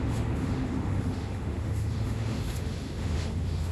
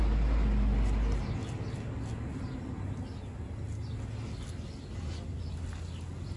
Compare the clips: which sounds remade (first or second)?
first